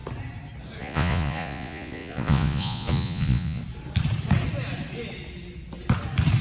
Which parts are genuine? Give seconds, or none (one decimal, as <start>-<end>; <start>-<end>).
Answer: 0.0-0.8; 3.6-6.4